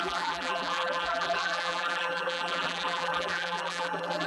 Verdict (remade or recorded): remade